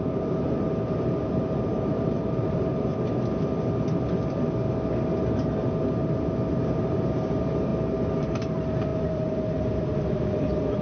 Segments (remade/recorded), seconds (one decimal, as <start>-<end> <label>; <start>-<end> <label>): 0.0-2.9 remade; 2.9-6.5 recorded; 6.5-7.7 remade; 7.7-8.2 recorded; 8.2-10.8 remade